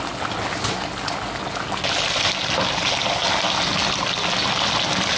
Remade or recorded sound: recorded